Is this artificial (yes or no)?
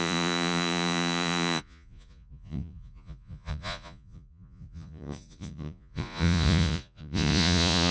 yes